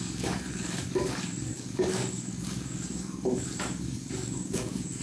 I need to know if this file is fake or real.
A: fake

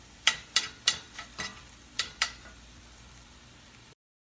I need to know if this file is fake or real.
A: fake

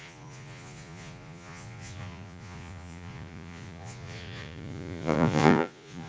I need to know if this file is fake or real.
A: fake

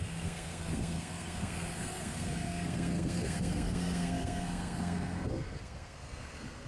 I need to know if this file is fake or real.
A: fake